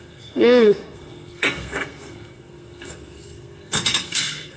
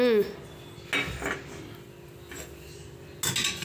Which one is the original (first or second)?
second